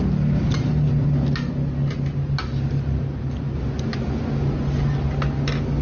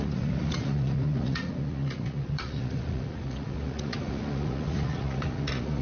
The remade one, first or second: second